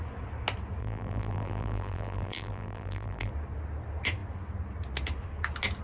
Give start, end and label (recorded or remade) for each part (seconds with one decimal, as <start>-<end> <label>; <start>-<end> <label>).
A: 0.0-0.8 recorded; 0.8-3.3 remade; 3.3-5.8 recorded